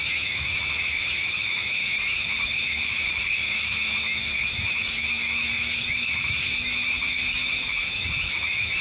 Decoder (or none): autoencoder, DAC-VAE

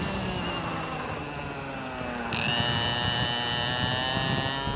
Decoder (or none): none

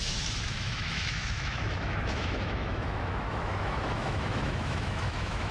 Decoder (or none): autoencoder, DAC-VAE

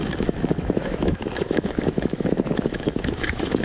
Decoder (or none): autoencoder, DAC-VAE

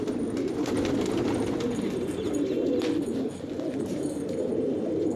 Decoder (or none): none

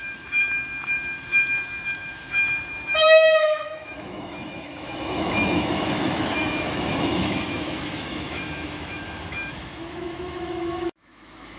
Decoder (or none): autoencoder, DAC-VAE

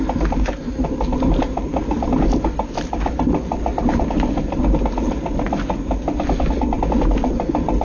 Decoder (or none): none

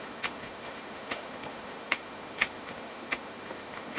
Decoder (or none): autoencoder, DAC-VAE